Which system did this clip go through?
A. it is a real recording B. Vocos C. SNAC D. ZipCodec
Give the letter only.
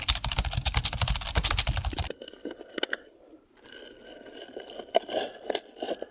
A